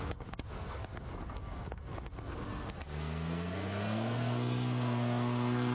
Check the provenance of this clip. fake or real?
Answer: fake